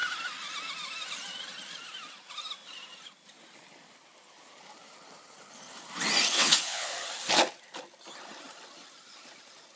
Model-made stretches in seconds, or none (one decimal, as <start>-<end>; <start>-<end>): 6.3-6.9